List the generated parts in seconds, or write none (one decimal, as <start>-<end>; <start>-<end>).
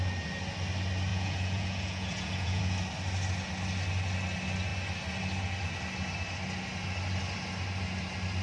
1.1-2.6